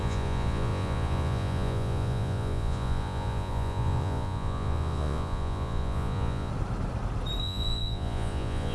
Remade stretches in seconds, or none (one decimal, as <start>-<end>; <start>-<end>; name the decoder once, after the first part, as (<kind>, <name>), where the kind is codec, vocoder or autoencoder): 0.0-6.5 (vocoder, Vocos); 7.4-8.7